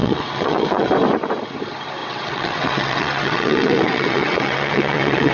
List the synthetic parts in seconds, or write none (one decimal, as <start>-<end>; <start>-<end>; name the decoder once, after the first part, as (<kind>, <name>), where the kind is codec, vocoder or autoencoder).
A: 0.0-0.9 (vocoder, WaveNeXt); 2.0-5.3